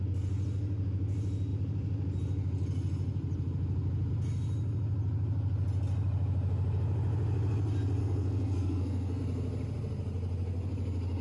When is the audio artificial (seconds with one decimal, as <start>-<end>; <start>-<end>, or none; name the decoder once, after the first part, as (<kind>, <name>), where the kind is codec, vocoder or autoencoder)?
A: 8.0-9.2 (codec, SNAC)